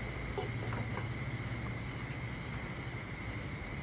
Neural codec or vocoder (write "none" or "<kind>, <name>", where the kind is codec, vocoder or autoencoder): none